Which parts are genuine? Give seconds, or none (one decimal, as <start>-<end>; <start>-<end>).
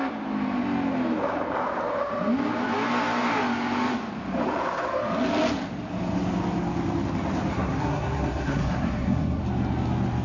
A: 0.0-7.5; 9.4-10.2